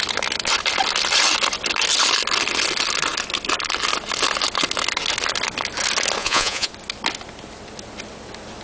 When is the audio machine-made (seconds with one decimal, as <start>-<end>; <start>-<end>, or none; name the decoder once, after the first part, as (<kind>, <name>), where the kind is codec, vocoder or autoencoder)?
6.2-6.7 (vocoder, Vocos)